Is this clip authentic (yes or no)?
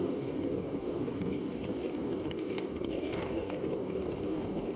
no